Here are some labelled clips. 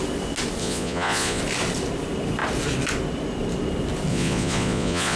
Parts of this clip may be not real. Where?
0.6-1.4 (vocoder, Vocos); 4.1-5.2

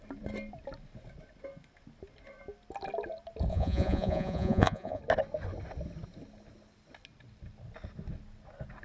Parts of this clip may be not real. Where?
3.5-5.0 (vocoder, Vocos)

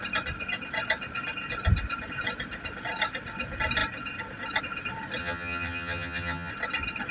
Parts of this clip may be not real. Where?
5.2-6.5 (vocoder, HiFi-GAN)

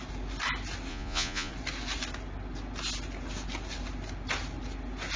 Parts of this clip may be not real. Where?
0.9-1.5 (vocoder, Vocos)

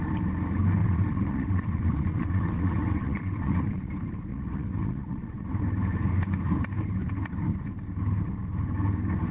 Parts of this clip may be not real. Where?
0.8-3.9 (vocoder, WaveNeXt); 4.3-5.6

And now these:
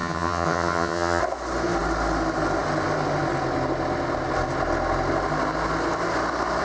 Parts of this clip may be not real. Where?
0.0-1.2 (vocoder, HiFi-GAN)

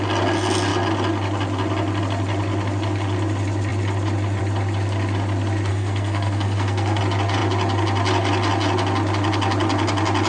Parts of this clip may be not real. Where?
5.7-7.0 (codec, SNAC)

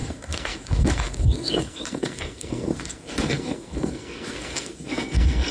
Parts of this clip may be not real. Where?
0.0-5.5 (codec, SNAC)